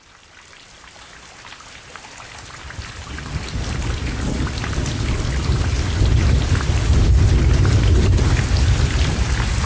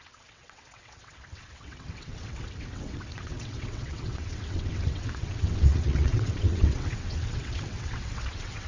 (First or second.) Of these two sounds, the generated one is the second